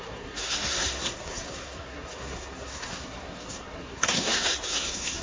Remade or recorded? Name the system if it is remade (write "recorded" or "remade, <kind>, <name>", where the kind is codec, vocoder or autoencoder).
remade, codec, SNAC